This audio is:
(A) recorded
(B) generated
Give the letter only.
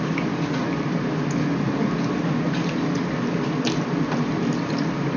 A